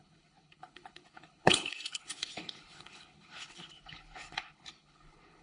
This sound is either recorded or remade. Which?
remade